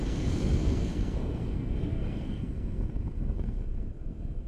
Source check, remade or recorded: remade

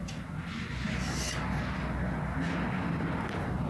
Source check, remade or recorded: recorded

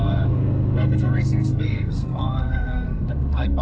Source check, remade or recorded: remade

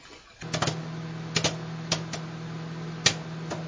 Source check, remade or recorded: recorded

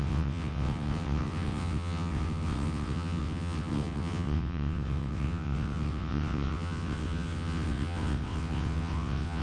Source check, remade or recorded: remade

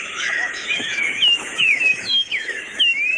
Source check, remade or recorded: remade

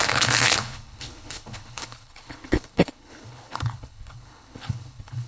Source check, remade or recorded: remade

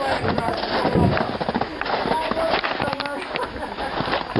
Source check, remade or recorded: recorded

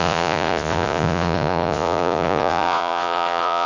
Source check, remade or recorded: remade